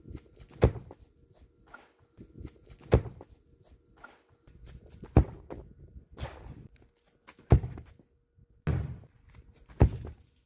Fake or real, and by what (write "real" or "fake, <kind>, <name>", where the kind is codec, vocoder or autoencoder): real